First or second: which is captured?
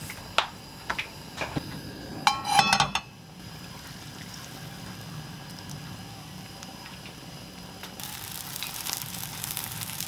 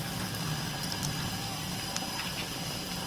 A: first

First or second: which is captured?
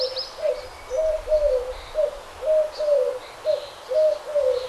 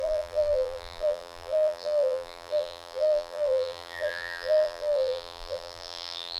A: first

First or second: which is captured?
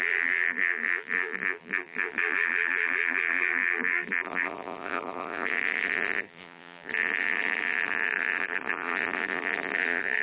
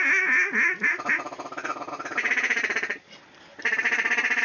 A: second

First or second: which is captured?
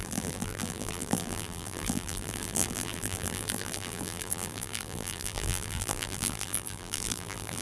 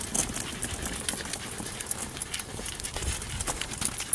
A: second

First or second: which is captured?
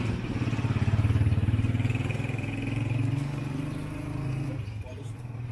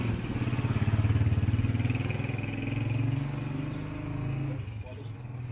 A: second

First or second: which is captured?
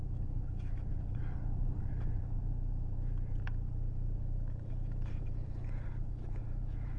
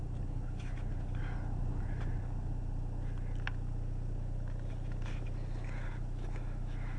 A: second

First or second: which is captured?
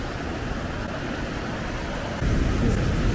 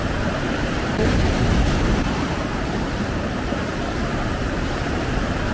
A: first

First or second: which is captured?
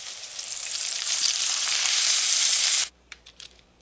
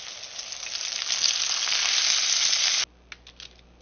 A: second